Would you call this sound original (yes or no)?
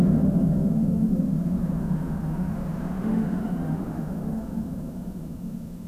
no